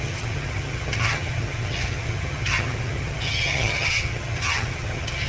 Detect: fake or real fake